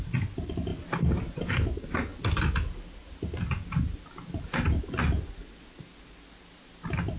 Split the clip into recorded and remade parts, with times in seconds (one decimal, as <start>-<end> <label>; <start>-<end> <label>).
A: 0.0-7.2 recorded